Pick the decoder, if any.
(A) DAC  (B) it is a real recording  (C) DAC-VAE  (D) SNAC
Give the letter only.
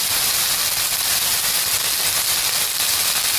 B